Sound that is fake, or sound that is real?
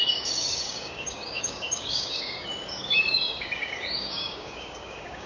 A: fake